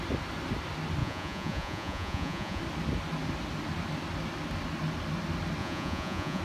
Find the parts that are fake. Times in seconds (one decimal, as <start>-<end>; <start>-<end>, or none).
1.0-2.6; 5.6-6.4